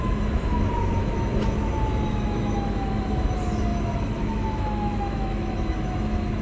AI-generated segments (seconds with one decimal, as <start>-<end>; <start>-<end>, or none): 0.0-6.4